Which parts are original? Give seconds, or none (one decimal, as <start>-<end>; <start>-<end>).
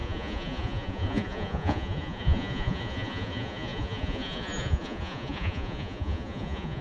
none